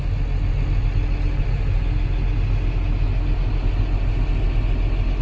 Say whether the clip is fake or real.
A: real